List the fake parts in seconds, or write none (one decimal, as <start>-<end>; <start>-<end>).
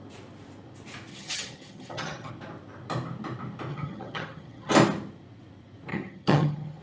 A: 1.1-2.3; 3.7-4.7; 5.9-6.8